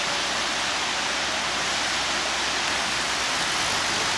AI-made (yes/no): no